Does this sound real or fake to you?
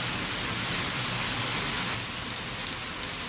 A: real